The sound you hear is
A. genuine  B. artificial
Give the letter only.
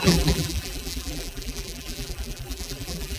B